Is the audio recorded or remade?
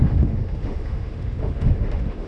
remade